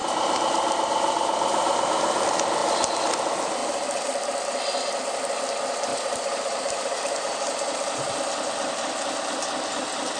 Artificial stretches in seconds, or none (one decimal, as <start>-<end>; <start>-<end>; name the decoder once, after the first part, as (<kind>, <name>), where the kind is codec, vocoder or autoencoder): 0.0-2.2 (vocoder, BigVGAN v2); 5.9-7.3